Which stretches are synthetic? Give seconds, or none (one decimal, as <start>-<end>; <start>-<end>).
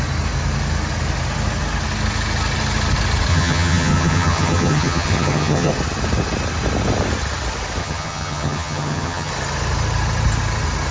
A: 3.3-5.7; 7.8-9.3